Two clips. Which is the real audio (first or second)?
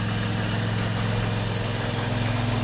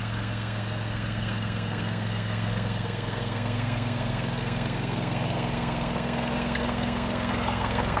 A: first